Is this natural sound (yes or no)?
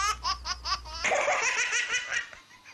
yes